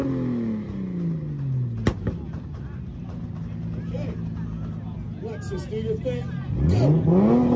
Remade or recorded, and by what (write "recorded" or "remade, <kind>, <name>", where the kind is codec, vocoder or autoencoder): recorded